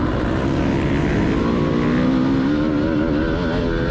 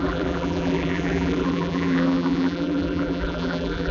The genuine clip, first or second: first